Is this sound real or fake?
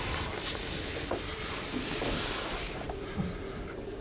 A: fake